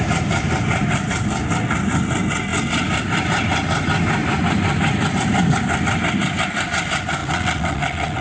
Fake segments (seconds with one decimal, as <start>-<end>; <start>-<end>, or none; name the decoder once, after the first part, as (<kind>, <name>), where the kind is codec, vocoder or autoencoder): 7.2-8.2 (vocoder, WaveNeXt)